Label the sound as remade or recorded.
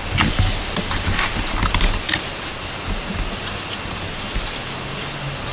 recorded